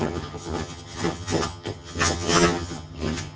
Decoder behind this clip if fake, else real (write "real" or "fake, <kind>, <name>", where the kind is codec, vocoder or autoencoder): fake, vocoder, HiFi-GAN